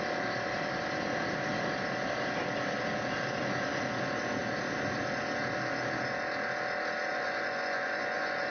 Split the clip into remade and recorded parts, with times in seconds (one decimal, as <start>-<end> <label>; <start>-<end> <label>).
0.0-7.1 recorded; 7.1-8.5 remade